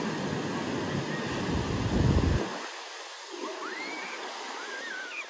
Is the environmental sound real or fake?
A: real